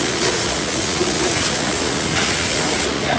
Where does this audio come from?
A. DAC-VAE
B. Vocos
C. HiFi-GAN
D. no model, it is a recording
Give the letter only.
B